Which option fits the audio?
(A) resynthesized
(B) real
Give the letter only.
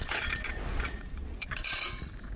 A